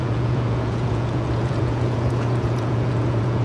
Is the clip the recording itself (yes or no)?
no